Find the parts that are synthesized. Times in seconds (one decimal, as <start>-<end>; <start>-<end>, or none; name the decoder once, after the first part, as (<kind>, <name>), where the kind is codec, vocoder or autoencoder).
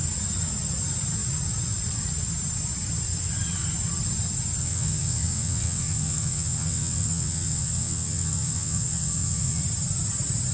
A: 4.6-9.6 (vocoder, WaveNeXt)